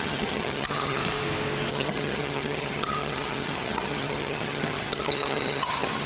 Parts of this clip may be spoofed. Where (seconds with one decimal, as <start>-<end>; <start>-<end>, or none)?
0.0-1.0; 1.7-6.1